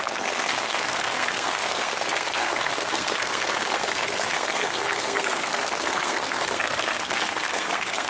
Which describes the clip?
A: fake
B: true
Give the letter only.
A